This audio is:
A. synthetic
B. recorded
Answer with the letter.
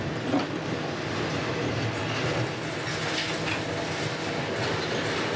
B